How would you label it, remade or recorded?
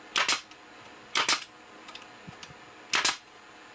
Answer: recorded